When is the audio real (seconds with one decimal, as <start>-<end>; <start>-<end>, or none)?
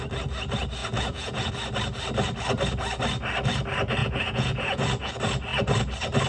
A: 0.0-0.8; 1.5-4.0; 5.1-6.3